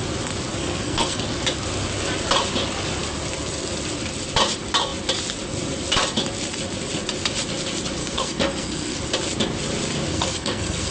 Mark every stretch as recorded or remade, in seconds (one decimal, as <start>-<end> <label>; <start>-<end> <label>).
0.0-0.6 recorded; 0.6-1.2 remade; 1.2-8.0 recorded; 8.0-9.0 remade; 9.0-10.1 recorded; 10.1-10.9 remade